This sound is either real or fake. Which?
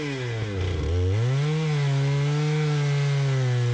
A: real